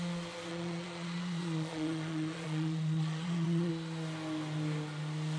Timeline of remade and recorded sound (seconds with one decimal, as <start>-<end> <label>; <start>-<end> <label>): 0.0-0.5 recorded; 0.5-3.7 remade; 3.7-5.4 recorded

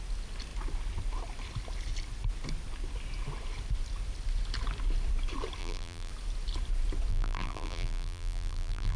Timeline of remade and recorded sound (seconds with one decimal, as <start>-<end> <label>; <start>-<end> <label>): 0.0-5.6 recorded; 5.6-6.1 remade; 6.1-7.1 recorded; 7.1-9.0 remade

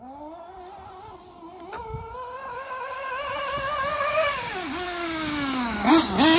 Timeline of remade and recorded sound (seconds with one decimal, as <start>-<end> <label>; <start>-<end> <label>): 0.0-2.5 recorded; 2.5-3.1 remade; 3.1-3.9 recorded; 3.9-5.9 remade; 5.9-6.4 recorded

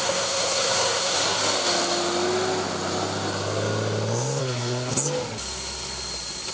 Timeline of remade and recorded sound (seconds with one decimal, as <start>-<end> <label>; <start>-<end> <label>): 0.0-1.4 remade; 1.4-4.4 recorded; 4.4-4.9 remade; 4.9-6.5 recorded